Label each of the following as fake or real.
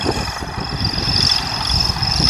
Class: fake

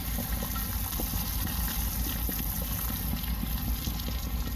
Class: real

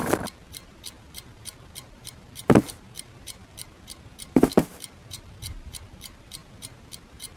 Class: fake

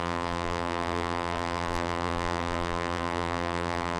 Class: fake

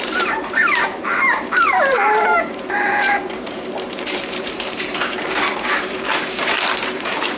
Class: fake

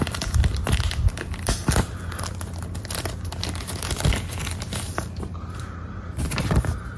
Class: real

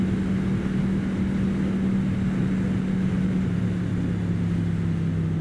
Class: real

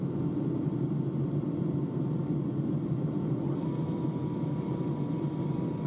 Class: real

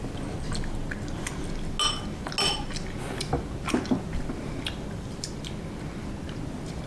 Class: real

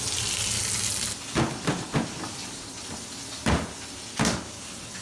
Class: real